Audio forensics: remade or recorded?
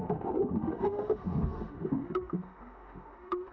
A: remade